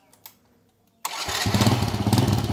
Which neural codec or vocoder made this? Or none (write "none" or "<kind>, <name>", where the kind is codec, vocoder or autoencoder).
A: none